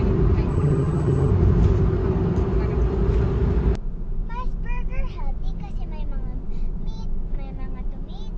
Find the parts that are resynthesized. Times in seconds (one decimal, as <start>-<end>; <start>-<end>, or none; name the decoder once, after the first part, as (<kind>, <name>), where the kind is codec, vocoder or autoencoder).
0.5-1.3 (vocoder, HiFi-GAN)